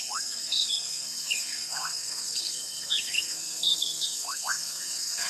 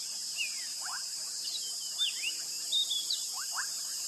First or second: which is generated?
first